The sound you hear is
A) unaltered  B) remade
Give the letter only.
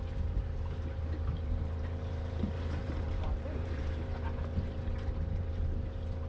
B